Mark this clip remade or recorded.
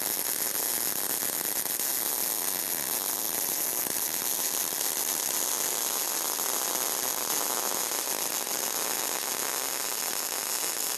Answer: recorded